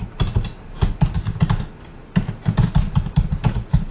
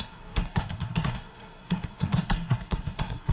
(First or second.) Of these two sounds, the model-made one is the second